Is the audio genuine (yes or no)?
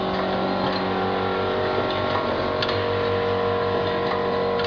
yes